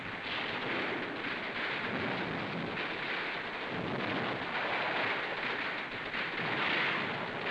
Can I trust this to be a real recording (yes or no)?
yes